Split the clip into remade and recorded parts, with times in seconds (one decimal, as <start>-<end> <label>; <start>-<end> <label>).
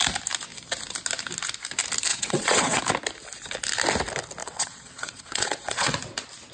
0.0-2.1 recorded; 2.1-2.8 remade; 2.8-4.4 recorded; 4.4-6.0 remade; 6.0-6.5 recorded